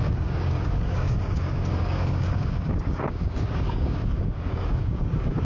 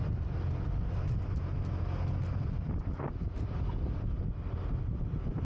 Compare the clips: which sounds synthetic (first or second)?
first